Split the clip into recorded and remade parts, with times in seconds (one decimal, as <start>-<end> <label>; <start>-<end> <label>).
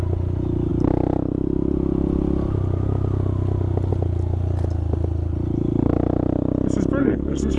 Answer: 0.0-7.0 recorded; 7.0-7.6 remade